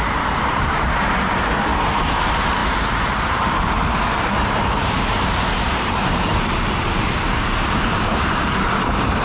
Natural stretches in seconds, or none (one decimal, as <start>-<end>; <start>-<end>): none